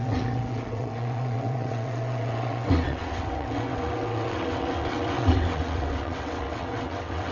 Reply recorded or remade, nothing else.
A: remade